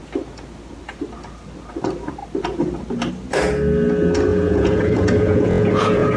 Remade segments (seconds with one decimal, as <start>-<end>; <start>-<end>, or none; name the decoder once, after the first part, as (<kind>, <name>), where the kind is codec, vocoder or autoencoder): 4.3-6.2 (vocoder, Vocos)